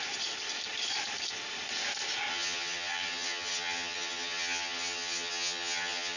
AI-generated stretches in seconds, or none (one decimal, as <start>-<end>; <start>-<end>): 2.3-6.2

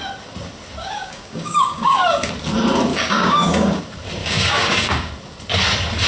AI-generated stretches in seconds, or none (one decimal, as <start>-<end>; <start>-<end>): 0.8-2.3; 2.9-3.8; 4.2-5.1

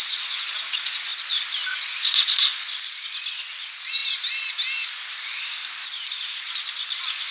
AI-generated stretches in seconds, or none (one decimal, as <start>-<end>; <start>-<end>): 0.0-1.1; 1.7-2.5; 3.5-4.0

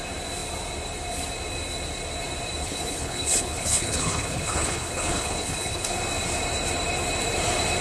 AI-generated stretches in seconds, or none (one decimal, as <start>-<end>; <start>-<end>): 2.6-5.9

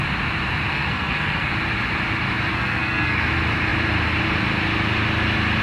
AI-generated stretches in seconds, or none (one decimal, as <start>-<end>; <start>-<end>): 0.7-1.5; 2.5-3.3

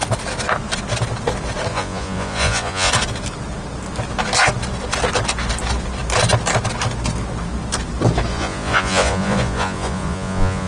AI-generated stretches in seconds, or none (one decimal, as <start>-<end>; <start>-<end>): 1.7-2.9; 8.3-10.7

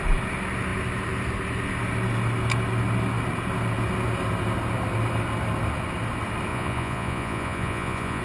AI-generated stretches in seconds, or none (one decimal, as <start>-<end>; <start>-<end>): 6.5-8.2

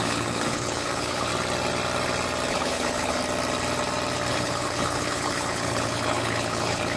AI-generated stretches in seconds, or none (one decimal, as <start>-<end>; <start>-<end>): 0.0-1.3; 2.5-3.2; 4.3-7.0